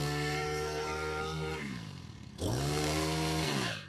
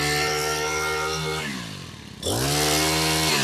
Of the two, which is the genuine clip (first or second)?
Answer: second